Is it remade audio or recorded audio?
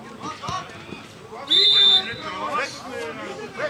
recorded